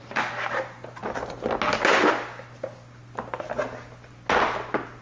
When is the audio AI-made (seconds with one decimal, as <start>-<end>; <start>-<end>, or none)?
none

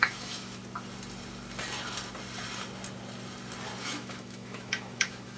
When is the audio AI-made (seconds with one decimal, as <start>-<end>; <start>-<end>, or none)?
0.0-0.6; 3.8-5.4